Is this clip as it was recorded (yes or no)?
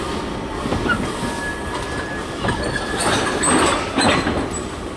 yes